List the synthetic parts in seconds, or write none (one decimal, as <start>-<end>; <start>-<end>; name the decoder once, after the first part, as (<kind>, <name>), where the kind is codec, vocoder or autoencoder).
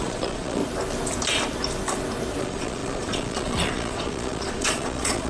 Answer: 0.0-0.6 (vocoder, Vocos); 2.4-5.3